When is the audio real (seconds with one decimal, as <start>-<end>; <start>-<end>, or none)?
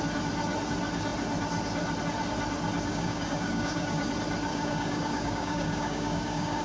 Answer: 0.0-2.9; 4.1-4.5